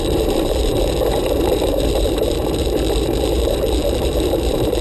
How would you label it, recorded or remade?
remade